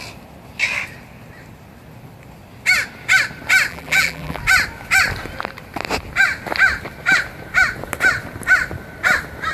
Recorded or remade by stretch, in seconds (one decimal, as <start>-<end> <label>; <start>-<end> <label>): 0.0-3.7 recorded; 3.7-4.4 remade; 4.4-9.5 recorded